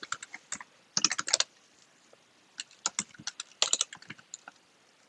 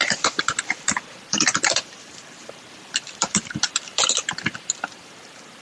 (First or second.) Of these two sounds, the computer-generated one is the second